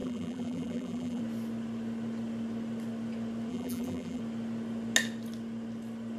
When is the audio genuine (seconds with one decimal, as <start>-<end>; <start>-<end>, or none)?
1.2-3.5; 4.2-6.2